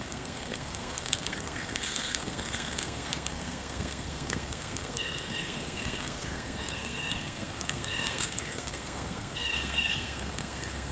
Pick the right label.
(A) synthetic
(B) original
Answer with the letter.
A